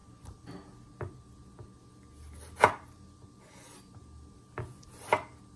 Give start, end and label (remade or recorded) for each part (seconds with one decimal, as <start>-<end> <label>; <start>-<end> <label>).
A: 0.0-5.6 recorded